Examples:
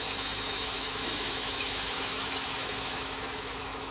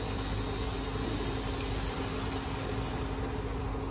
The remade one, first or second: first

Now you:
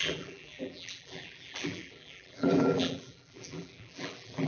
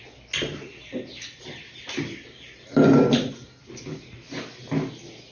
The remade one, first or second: first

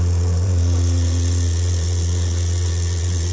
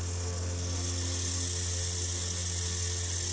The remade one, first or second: first